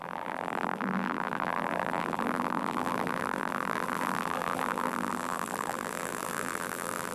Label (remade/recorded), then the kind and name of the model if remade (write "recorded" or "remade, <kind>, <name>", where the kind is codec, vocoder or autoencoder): remade, vocoder, BigVGAN v2